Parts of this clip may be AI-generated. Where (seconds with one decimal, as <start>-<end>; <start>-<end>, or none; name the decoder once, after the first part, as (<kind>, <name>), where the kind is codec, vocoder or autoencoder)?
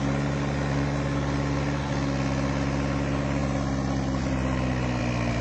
3.4-5.0 (vocoder, BigVGAN v2)